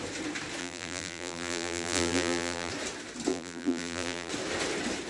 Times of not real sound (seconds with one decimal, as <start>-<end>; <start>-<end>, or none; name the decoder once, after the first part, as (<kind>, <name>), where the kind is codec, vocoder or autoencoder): 0.6-2.7 (vocoder, BigVGAN v2); 3.3-4.3

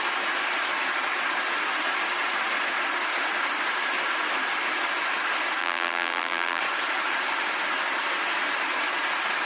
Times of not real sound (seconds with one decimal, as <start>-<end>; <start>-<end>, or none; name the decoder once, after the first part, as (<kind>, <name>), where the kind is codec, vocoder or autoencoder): 5.6-6.6 (vocoder, BigVGAN v2)

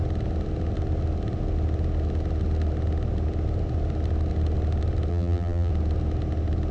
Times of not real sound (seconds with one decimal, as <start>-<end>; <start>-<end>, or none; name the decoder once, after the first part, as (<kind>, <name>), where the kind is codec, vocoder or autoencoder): 5.1-5.7 (vocoder, BigVGAN v2)

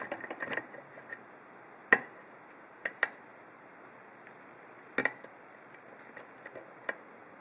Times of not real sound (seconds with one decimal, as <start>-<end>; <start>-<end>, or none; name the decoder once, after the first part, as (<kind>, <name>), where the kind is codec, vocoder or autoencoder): 3.3-3.9 (vocoder, BigVGAN v2)

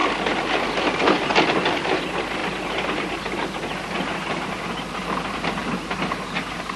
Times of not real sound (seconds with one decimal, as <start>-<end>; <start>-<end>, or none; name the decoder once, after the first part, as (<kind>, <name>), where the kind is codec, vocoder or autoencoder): 0.0-0.8 (vocoder, BigVGAN v2); 1.3-1.9; 2.4-3.2; 5.6-6.8